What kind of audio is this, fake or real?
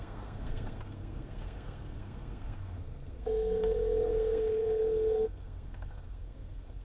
fake